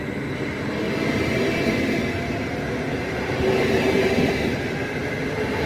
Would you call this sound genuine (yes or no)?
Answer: yes